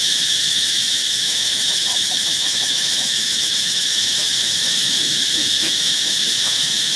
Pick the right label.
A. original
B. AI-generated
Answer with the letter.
B